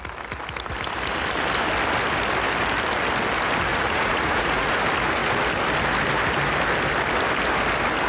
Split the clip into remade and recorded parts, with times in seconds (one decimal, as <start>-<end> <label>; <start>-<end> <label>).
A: 0.0-3.7 recorded; 3.7-4.8 remade; 4.8-8.1 recorded